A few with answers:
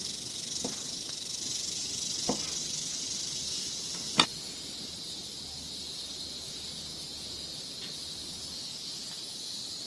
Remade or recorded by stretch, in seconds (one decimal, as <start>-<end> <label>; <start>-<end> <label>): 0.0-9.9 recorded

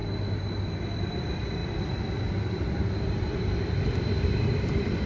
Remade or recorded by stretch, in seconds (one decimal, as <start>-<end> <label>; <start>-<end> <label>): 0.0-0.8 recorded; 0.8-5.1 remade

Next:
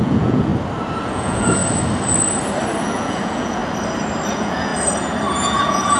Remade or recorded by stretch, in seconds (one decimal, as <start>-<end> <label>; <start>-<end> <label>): 0.0-0.5 remade; 0.5-1.0 recorded; 1.0-1.6 remade; 1.6-2.8 recorded; 2.8-3.6 remade; 3.6-4.3 recorded; 4.3-4.7 remade; 4.7-5.4 recorded; 5.4-6.0 remade

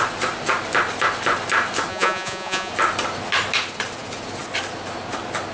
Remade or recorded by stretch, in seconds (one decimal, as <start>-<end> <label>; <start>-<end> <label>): 0.0-1.9 recorded; 1.9-2.7 remade; 2.7-5.5 recorded

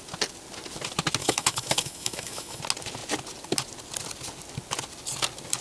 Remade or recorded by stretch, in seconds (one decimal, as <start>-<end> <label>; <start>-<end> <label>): 0.0-1.2 recorded; 1.2-2.6 remade; 2.6-5.6 recorded